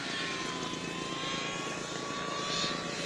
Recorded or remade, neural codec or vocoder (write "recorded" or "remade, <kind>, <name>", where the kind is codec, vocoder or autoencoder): recorded